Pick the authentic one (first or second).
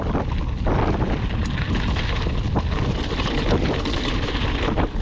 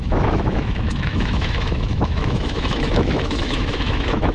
first